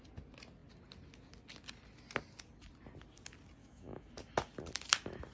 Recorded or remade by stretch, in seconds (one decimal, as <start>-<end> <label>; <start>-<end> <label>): 0.0-3.6 recorded; 3.6-4.1 remade; 4.1-5.3 recorded